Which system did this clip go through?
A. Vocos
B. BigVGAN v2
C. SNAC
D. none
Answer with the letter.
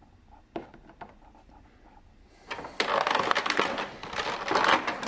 D